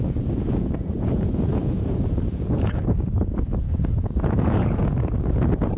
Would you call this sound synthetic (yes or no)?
yes